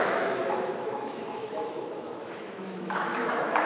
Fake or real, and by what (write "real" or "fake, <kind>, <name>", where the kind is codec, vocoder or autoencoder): fake, autoencoder, DAC-VAE